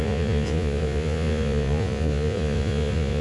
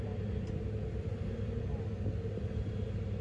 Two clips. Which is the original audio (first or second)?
second